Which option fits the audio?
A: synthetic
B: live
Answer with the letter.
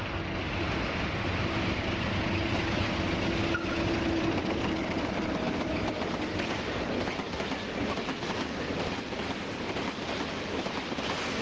B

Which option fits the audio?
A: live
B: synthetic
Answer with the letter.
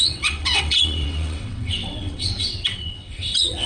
B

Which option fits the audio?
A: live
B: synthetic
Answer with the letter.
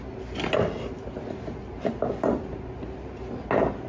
A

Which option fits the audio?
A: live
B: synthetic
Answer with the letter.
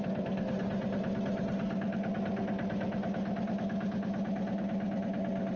A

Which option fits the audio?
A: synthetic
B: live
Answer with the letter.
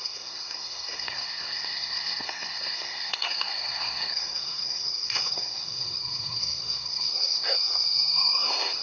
A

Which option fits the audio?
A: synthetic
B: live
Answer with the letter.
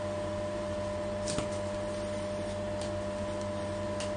B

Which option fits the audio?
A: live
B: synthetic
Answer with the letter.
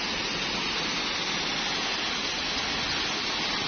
A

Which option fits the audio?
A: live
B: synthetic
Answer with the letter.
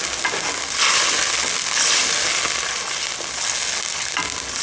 A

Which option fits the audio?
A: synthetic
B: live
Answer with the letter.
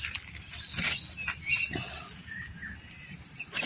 B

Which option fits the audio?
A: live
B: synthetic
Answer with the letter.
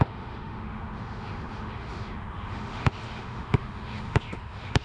B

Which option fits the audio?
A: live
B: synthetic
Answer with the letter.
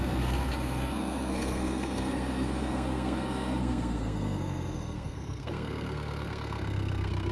B